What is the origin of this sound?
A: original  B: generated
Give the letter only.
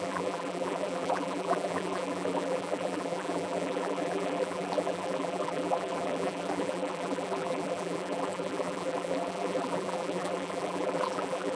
B